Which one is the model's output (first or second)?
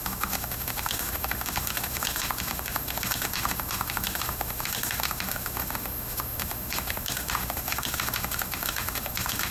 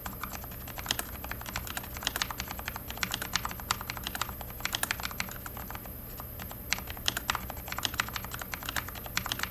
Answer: first